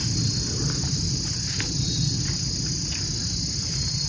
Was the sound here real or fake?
real